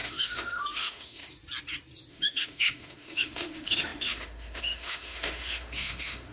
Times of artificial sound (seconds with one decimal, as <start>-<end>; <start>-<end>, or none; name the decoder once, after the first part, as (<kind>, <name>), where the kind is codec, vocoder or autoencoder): 0.0-1.2 (autoencoder, DAC-VAE); 2.1-6.3